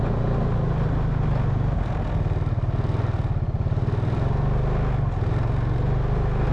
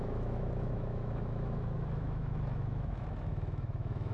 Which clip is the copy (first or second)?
second